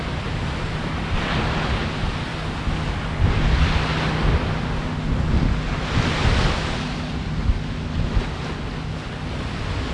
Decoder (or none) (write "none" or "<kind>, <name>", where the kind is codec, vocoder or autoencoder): none